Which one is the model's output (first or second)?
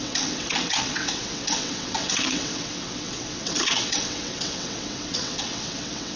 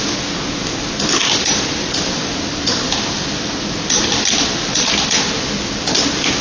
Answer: first